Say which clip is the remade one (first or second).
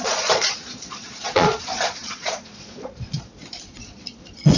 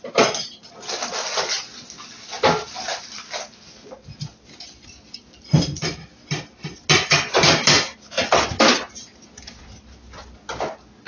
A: first